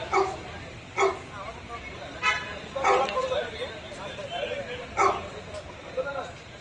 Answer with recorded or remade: recorded